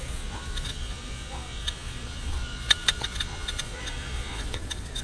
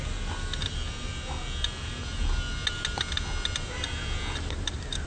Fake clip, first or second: first